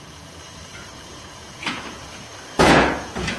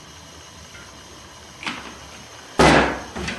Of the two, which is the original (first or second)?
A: second